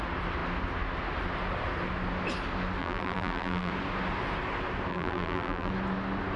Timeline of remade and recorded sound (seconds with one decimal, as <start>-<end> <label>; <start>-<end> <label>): 0.0-2.8 recorded; 2.8-3.7 remade; 3.7-4.9 recorded; 4.9-5.7 remade; 5.7-6.4 recorded